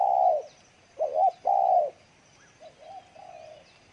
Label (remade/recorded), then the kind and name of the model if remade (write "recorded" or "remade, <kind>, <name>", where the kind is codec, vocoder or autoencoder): recorded